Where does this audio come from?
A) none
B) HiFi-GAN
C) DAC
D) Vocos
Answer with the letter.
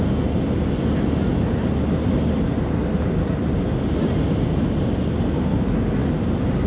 A